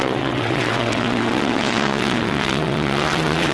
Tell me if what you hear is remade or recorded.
remade